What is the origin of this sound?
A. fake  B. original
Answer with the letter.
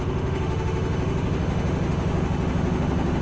A